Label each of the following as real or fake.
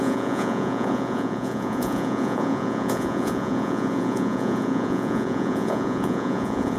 fake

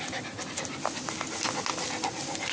real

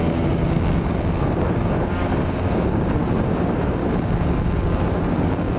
fake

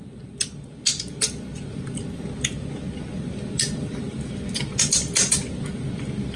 real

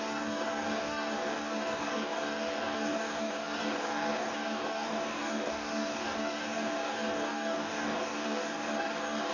fake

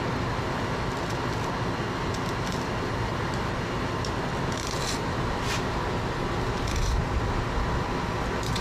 real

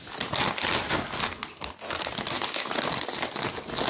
real